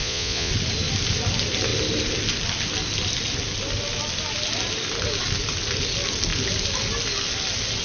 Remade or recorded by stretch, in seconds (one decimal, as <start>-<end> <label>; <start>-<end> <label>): 0.0-0.5 remade; 0.5-7.8 recorded